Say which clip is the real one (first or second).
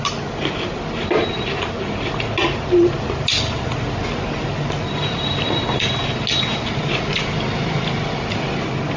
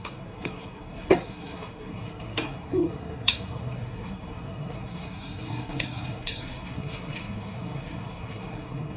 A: first